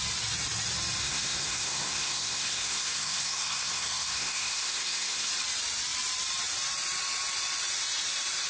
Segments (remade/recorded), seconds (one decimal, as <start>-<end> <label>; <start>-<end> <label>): 0.0-1.0 recorded; 1.0-5.3 remade; 5.3-8.5 recorded